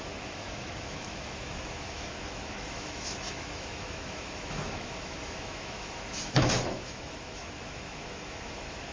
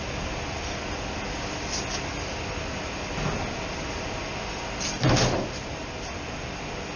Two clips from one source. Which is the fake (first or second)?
first